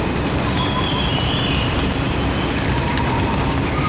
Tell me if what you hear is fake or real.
real